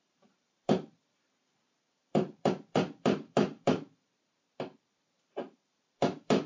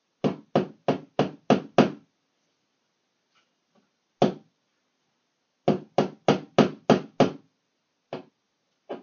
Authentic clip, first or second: second